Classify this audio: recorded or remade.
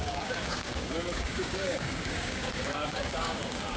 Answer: remade